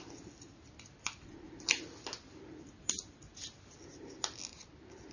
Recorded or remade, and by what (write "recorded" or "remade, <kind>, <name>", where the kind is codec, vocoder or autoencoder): recorded